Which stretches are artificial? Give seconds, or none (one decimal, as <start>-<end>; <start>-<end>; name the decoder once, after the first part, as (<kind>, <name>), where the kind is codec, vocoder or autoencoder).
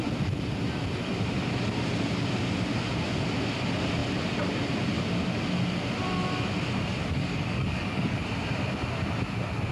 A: 7.0-8.2 (codec, DAC)